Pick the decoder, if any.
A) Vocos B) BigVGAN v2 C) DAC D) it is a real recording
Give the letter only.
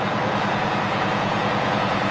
A